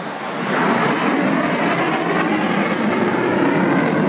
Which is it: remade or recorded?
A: remade